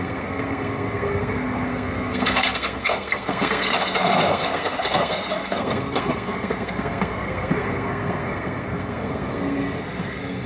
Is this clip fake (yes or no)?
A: yes